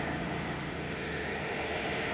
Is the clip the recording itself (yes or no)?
no